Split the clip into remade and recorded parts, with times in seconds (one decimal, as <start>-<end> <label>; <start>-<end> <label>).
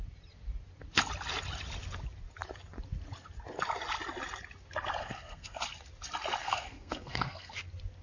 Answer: 0.0-5.0 recorded; 5.0-5.6 remade; 5.6-6.4 recorded; 6.4-7.5 remade; 7.5-8.0 recorded